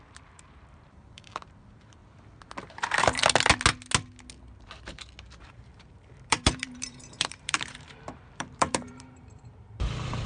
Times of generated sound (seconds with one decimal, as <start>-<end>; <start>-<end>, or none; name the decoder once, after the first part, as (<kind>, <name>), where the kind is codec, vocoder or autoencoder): 0.0-2.0 (vocoder, BigVGAN v2); 2.6-3.2; 5.4-10.3